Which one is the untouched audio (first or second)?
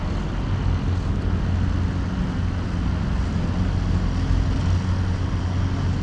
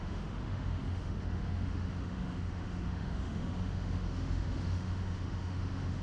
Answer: first